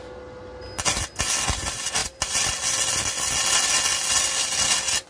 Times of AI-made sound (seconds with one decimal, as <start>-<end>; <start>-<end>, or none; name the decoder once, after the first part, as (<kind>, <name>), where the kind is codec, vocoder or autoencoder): none